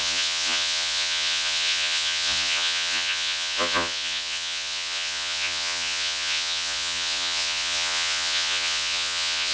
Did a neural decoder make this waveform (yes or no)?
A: yes